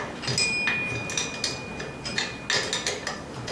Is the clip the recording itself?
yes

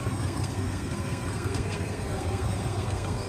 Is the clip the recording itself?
no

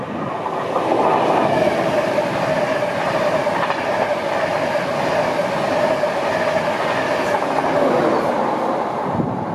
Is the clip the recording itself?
yes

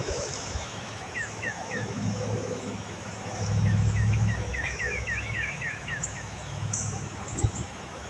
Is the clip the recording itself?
no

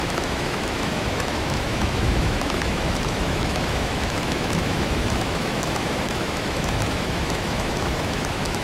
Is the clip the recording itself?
no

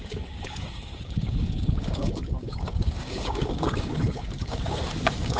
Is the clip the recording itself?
no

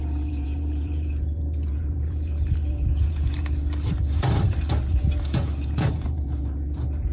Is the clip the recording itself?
no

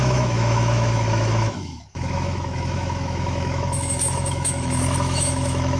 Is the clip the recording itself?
no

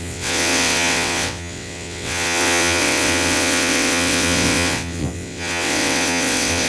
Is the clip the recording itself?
no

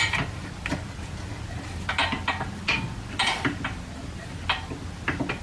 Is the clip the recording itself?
yes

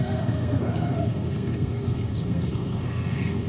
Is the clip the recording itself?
no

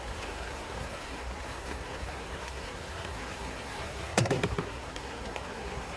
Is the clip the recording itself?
no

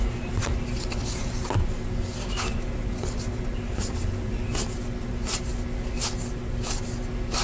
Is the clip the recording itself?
yes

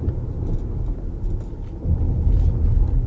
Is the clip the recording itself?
yes